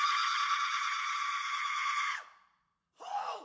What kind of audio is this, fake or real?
fake